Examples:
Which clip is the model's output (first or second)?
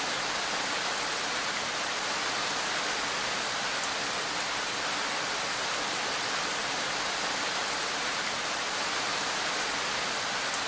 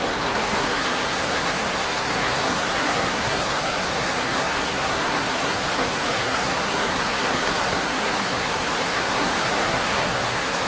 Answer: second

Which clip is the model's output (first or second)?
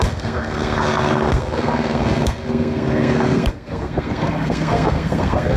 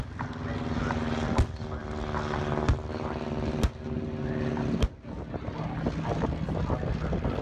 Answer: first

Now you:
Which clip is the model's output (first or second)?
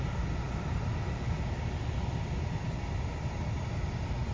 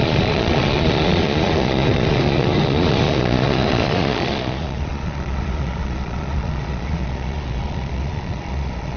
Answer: second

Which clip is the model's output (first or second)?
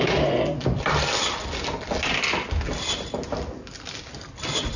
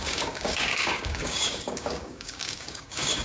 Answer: second